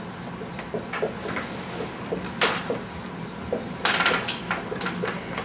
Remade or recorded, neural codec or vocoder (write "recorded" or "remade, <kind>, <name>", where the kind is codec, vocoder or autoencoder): recorded